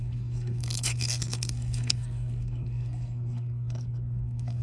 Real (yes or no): no